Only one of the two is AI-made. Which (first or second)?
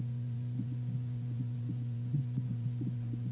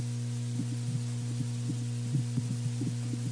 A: first